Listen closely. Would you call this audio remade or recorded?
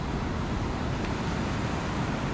recorded